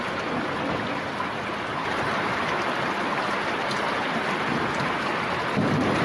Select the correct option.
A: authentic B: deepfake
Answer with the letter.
A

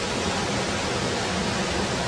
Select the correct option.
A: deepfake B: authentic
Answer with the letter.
B